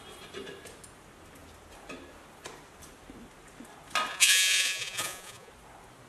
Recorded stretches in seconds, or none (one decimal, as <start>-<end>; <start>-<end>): 0.0-4.1; 5.5-6.1